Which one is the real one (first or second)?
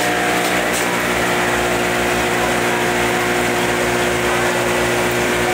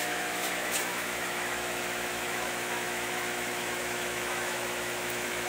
first